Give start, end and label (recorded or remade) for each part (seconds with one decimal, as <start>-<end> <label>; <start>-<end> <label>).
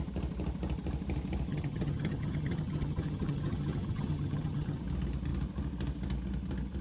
0.0-1.5 recorded; 1.5-4.8 remade; 4.8-6.8 recorded